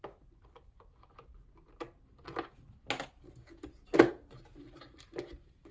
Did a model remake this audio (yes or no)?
no